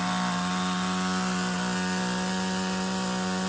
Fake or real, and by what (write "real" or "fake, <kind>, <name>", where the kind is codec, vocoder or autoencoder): real